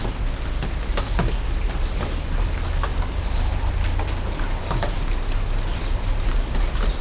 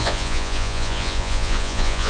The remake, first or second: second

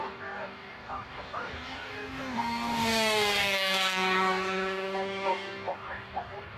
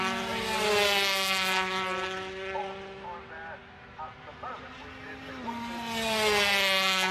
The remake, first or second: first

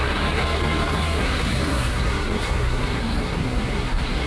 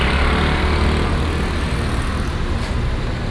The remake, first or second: first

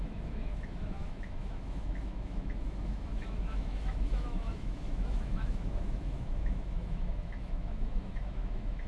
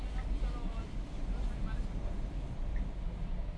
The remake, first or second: first